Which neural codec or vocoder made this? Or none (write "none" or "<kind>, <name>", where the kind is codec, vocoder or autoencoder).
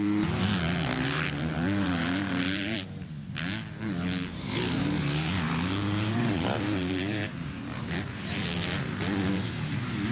vocoder, BigVGAN v2